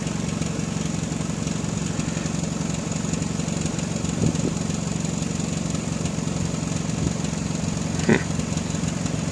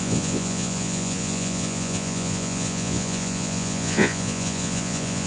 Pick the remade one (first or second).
second